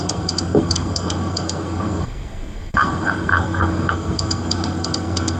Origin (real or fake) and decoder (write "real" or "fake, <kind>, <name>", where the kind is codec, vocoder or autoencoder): fake, codec, SNAC